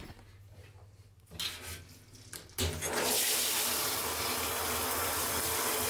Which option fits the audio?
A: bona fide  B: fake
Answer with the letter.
A